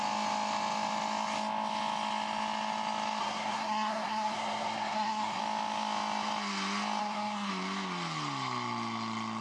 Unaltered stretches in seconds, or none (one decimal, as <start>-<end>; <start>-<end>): 0.0-3.2; 5.4-7.0; 7.5-9.4